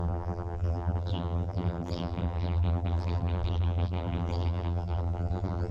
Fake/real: fake